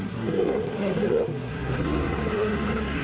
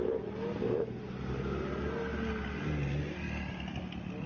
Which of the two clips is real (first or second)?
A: second